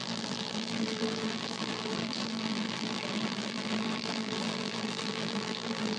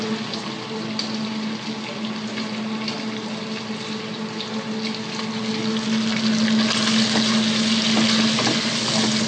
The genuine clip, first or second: second